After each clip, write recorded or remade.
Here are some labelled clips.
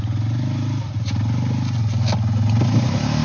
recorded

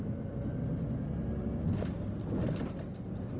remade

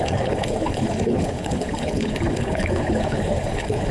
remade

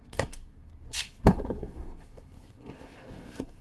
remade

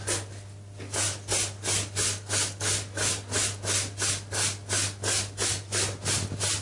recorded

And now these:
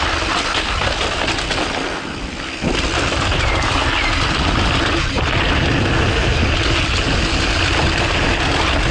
recorded